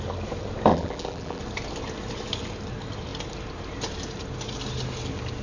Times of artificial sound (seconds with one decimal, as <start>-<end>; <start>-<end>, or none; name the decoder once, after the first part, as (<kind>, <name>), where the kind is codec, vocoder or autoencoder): 0.7-1.4 (vocoder, BigVGAN v2)